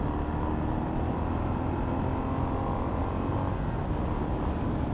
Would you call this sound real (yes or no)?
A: yes